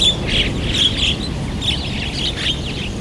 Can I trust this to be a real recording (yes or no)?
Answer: yes